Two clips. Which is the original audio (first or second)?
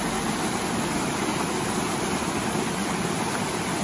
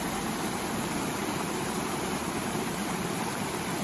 first